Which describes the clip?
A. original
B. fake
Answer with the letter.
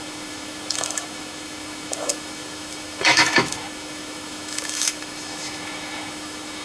B